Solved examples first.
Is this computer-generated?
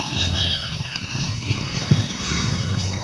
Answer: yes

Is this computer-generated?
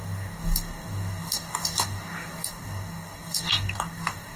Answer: yes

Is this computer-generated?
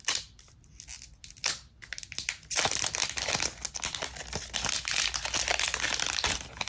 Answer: no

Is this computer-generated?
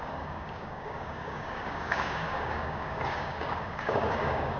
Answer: yes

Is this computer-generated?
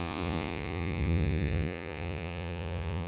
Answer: yes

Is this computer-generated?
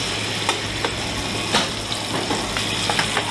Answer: no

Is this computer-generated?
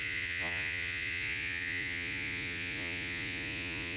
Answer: yes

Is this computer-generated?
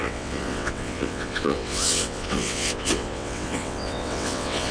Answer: yes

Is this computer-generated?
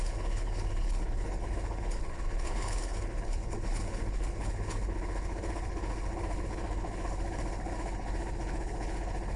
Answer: yes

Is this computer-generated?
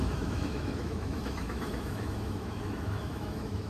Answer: yes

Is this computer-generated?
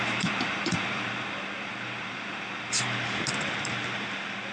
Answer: yes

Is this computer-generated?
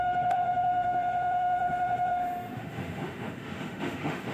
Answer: yes